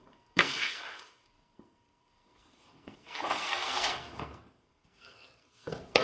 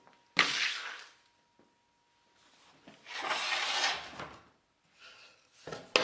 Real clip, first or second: second